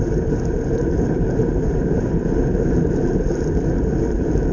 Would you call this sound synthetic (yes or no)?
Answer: yes